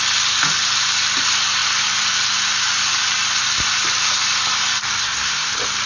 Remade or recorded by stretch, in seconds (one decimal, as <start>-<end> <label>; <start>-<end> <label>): 0.0-5.0 recorded; 5.0-5.5 remade; 5.5-5.9 recorded